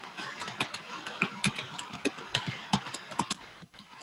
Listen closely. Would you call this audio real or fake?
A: fake